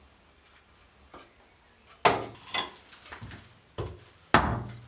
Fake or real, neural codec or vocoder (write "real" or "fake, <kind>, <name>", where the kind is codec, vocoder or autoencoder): real